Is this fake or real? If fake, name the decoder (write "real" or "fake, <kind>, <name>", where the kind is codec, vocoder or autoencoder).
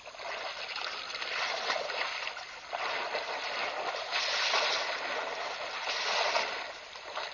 real